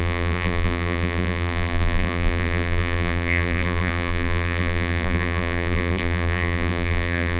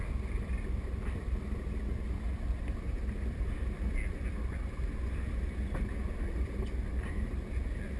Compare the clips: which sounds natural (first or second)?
second